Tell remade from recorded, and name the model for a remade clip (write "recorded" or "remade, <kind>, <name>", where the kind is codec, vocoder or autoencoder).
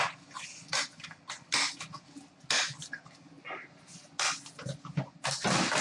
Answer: recorded